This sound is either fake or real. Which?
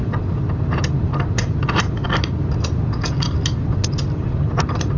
real